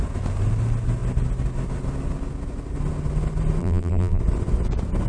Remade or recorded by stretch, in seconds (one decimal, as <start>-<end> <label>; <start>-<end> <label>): 0.0-3.6 recorded; 3.6-4.2 remade; 4.2-5.1 recorded